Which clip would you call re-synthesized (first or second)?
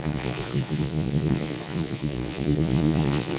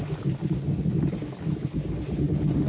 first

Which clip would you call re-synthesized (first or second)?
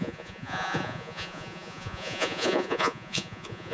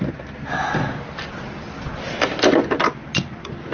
first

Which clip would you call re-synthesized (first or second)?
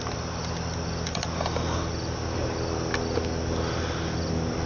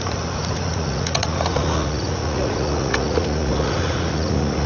second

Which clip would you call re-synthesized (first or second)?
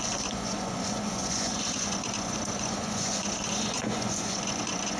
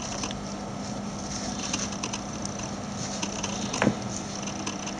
first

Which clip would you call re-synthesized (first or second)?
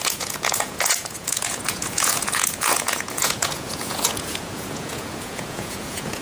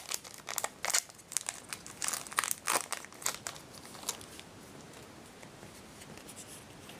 first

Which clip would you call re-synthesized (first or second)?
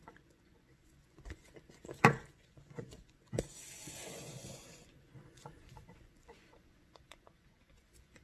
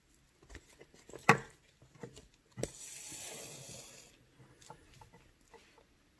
first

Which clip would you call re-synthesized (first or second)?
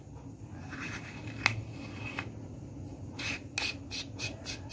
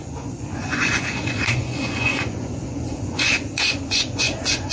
second